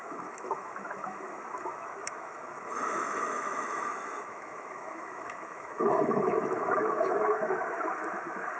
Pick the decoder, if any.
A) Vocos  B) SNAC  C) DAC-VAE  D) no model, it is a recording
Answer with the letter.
C